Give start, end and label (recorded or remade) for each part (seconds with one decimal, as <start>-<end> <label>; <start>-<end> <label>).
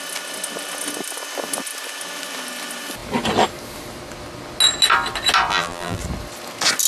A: 0.0-5.5 recorded; 5.5-6.0 remade; 6.0-6.9 recorded